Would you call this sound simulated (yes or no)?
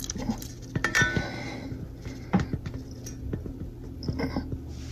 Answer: no